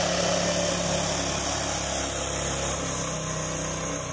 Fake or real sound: real